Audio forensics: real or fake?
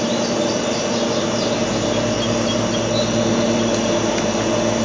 real